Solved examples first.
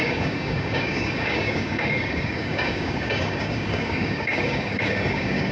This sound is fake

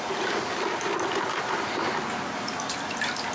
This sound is real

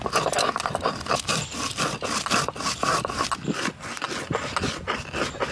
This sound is real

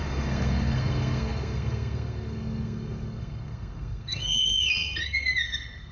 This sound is fake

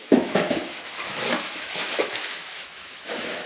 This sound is fake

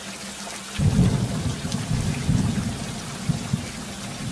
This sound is real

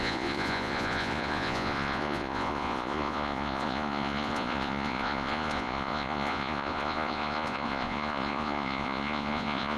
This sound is fake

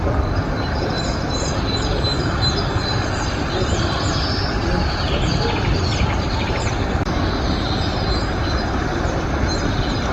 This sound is real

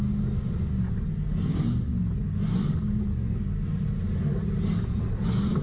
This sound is real